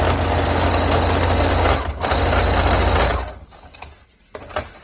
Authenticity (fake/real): real